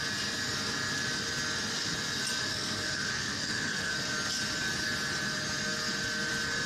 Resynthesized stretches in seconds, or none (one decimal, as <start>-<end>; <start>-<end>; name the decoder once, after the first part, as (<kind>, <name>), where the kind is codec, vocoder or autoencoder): 2.5-3.9 (codec, SNAC)